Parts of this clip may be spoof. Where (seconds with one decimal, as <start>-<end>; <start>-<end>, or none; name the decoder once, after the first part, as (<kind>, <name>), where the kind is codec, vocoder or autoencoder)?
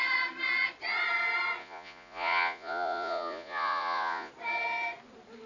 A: 1.6-4.3 (vocoder, Vocos)